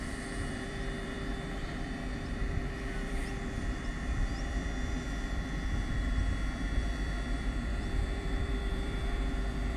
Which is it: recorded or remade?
remade